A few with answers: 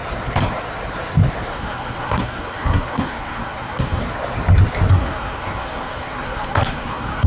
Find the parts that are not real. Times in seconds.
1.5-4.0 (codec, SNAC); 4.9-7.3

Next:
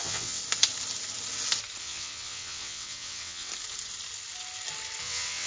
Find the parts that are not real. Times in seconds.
0.0-0.4 (vocoder, WaveNeXt); 1.8-3.5; 5.0-5.5

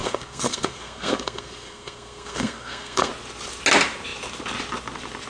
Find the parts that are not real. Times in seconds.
0.0-3.1 (codec, SNAC)

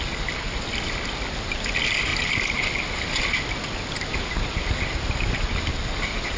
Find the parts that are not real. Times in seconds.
none

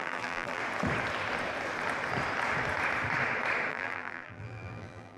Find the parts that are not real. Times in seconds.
0.0-0.6 (vocoder, BigVGAN v2); 3.7-5.2